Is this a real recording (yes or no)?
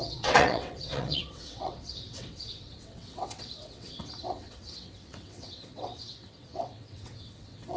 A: no